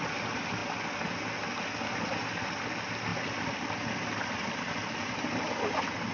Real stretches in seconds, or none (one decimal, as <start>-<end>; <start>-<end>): 0.0-6.1